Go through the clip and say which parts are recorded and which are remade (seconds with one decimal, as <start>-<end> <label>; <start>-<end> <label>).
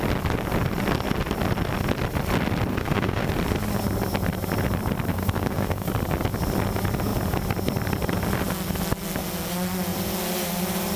0.0-2.7 recorded; 2.7-3.3 remade; 3.3-5.1 recorded; 5.1-5.9 remade; 5.9-11.0 recorded